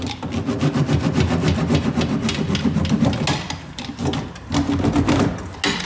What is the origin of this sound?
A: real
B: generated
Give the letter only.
A